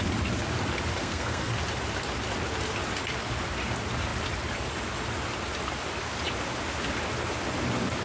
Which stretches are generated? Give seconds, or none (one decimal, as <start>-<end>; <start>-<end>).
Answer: 1.0-1.5